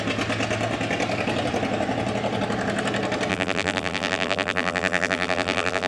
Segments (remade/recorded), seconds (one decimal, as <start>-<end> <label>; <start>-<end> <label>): 0.0-3.3 recorded; 3.3-5.9 remade

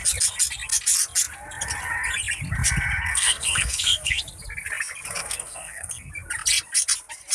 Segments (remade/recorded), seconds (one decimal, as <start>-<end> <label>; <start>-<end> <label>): 0.0-3.1 recorded; 3.1-4.2 remade; 4.2-5.2 recorded; 5.2-6.1 remade; 6.1-7.3 recorded

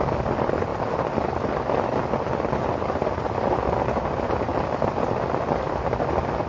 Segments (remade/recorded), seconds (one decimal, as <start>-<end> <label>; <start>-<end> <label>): 0.0-6.5 recorded

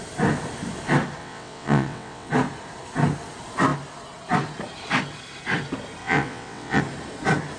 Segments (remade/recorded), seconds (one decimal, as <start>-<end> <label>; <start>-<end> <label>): 0.0-1.2 recorded; 1.2-2.3 remade; 2.3-6.0 recorded; 6.0-6.8 remade; 6.8-7.6 recorded

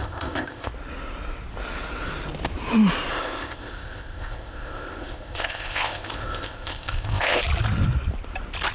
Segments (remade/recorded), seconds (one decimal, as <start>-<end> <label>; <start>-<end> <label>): 0.0-0.7 remade; 0.7-3.1 recorded; 3.1-7.4 remade; 7.4-8.7 recorded

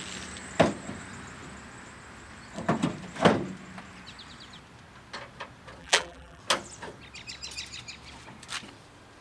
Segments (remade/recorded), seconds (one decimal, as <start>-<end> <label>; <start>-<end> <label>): 0.0-5.8 recorded; 5.8-6.4 remade; 6.4-9.2 recorded